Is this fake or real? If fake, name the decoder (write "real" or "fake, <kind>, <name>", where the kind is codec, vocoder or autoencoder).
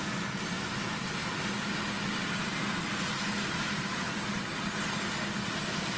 real